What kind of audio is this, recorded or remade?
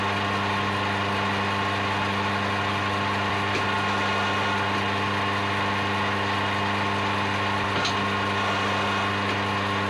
recorded